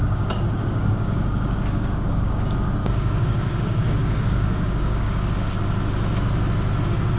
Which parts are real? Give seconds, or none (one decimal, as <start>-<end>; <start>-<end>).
2.4-2.8; 5.6-7.2

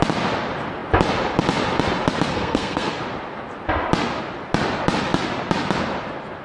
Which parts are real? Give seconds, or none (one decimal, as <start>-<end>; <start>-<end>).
0.0-2.3; 3.0-6.4

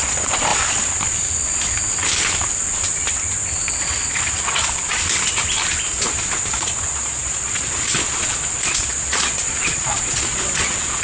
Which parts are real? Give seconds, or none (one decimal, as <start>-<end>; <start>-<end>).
0.5-3.8; 4.9-6.5